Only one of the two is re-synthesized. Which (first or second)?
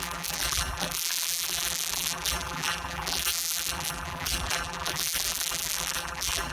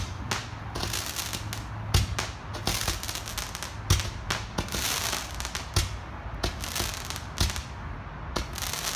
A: first